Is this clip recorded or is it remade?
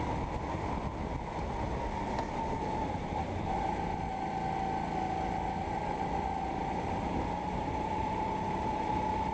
recorded